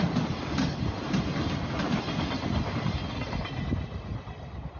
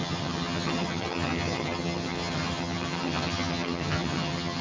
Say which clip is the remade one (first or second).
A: second